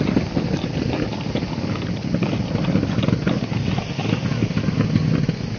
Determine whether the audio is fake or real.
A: real